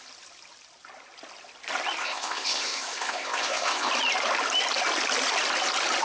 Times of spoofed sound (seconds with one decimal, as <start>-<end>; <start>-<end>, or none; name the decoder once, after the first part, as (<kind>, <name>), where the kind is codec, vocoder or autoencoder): 2.0-3.9 (codec, ZipCodec)